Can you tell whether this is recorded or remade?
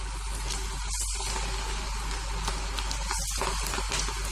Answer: recorded